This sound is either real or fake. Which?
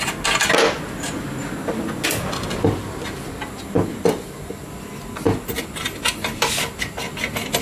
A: real